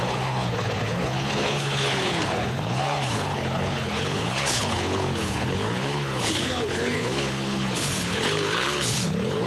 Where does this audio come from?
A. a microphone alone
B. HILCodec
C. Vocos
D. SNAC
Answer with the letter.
B